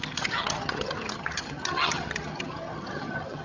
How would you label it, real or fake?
fake